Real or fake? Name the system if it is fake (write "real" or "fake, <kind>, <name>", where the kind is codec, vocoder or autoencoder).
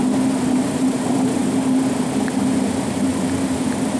real